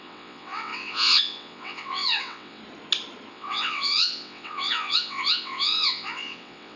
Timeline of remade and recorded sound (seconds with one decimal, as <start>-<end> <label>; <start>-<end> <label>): 0.0-2.6 remade; 2.6-3.3 recorded; 3.3-6.8 remade